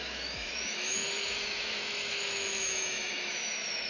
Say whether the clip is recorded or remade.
remade